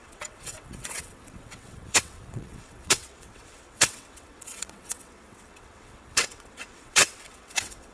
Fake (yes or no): yes